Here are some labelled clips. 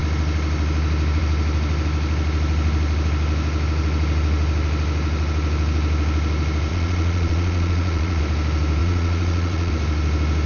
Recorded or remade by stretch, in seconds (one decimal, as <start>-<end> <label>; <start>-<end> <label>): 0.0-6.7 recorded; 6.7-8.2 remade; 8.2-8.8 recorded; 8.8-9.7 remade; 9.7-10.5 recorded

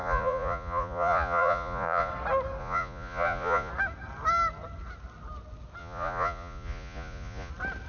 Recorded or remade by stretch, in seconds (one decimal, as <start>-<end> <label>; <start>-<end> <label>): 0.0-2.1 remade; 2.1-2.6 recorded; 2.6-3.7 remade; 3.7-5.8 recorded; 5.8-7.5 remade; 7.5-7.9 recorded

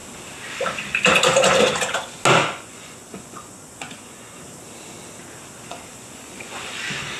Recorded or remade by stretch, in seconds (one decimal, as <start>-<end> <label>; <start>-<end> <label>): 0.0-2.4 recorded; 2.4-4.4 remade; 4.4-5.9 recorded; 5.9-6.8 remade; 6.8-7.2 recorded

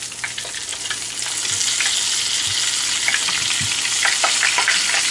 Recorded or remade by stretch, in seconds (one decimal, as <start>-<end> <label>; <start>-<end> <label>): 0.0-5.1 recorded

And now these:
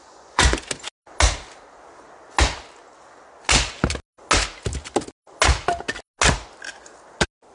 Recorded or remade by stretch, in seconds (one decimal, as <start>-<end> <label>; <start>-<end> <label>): 0.0-0.6 remade; 0.6-7.5 recorded